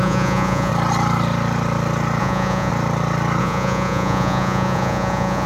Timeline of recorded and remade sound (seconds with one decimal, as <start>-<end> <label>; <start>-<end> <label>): 0.0-0.7 remade; 0.7-2.2 recorded; 2.2-2.7 remade; 2.7-3.4 recorded; 3.4-5.5 remade